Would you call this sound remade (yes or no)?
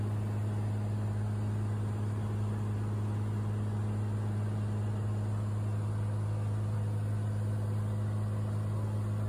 no